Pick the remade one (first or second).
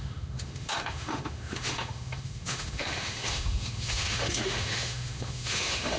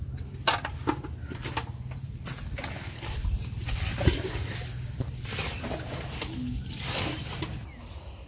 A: first